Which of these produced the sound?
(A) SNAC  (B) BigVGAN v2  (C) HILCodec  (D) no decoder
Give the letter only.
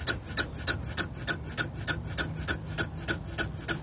D